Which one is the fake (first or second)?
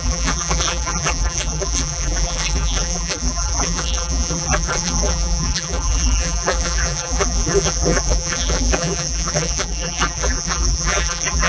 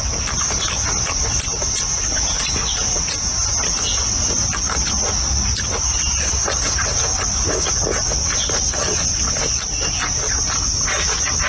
first